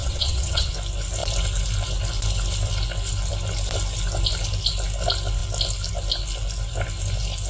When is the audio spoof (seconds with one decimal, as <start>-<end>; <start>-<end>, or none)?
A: 0.0-0.7